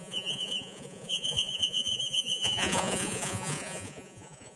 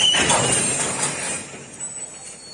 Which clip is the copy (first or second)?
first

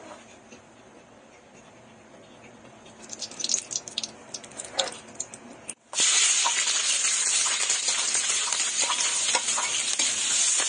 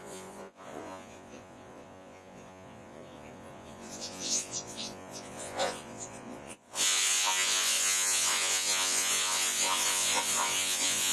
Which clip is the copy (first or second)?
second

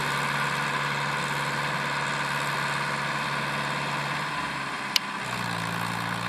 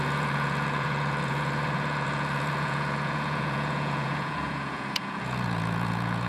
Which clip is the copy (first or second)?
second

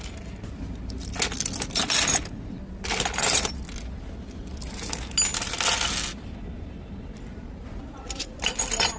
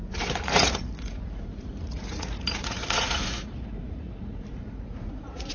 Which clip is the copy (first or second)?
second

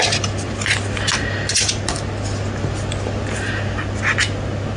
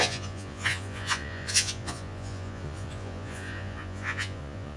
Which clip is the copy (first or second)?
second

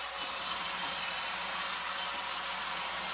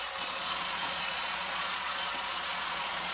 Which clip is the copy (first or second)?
second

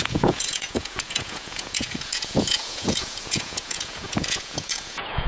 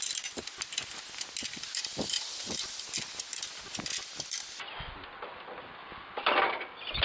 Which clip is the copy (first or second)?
first